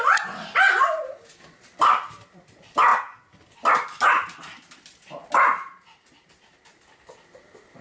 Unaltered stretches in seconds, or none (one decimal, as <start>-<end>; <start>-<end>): 0.0-7.8